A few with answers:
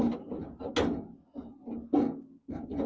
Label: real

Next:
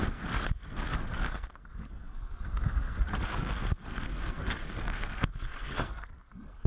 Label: fake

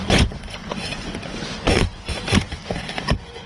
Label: fake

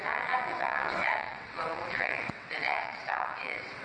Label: fake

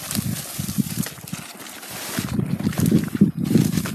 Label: real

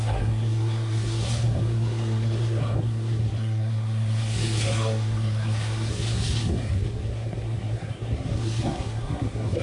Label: fake